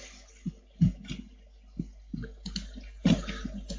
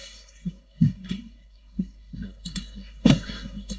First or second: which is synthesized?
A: second